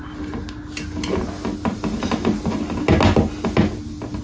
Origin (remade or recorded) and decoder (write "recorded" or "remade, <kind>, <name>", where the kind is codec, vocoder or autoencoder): recorded